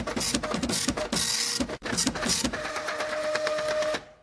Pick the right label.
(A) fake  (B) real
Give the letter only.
B